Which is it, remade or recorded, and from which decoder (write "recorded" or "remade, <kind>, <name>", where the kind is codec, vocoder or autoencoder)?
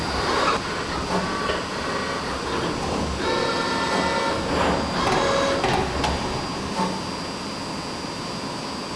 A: recorded